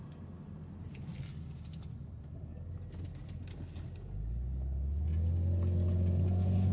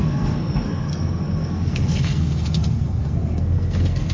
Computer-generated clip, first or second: second